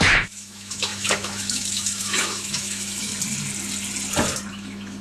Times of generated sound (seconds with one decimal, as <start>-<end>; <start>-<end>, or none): 0.0-3.1; 4.5-5.0